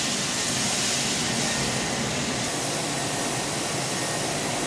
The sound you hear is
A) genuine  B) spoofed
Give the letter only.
A